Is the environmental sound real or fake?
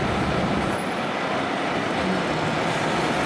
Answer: real